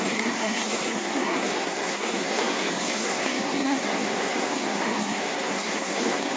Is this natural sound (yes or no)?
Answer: no